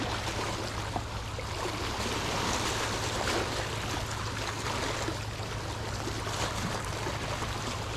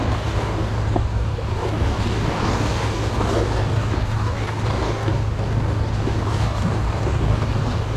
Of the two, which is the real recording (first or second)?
first